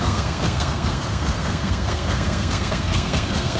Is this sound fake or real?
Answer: fake